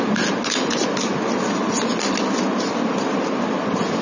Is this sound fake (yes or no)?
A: no